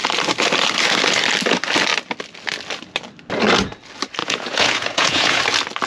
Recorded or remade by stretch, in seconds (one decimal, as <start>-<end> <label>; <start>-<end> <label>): 0.0-4.2 recorded; 4.2-5.4 remade; 5.4-5.9 recorded